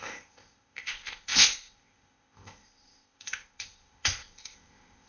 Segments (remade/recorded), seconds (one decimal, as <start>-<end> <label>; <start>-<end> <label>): 0.0-5.1 remade